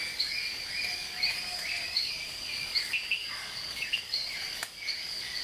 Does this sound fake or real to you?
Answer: fake